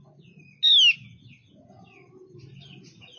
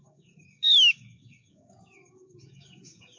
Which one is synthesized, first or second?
second